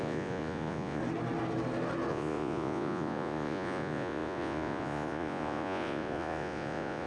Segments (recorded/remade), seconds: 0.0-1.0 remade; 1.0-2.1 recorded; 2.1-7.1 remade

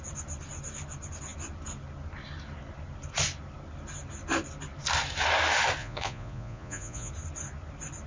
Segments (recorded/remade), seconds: 0.0-5.8 recorded; 5.8-7.1 remade; 7.1-8.1 recorded